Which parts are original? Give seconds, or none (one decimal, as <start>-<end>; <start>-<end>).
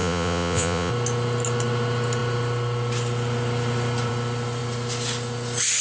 0.9-5.8